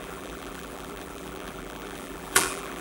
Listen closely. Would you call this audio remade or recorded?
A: remade